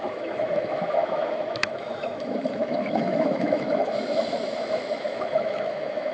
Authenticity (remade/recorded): remade